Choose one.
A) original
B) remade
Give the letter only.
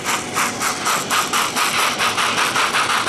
A